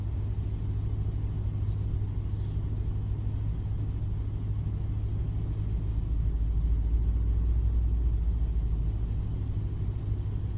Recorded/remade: recorded